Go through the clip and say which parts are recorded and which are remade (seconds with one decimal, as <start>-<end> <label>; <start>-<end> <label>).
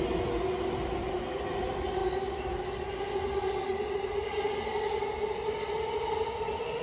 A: 0.0-6.8 recorded